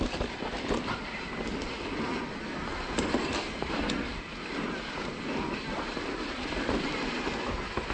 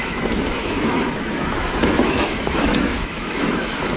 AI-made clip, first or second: second